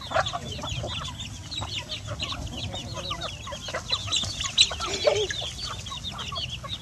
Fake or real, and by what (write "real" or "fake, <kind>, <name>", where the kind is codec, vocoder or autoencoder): real